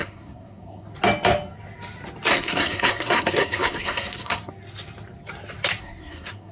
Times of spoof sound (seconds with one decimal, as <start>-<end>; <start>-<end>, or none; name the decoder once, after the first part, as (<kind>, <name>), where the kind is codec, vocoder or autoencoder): 0.0-0.9 (codec, SNAC); 2.3-4.5; 5.8-6.5